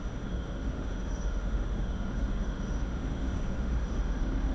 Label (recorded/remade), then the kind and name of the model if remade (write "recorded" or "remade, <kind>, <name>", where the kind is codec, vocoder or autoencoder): remade, autoencoder, DAC-VAE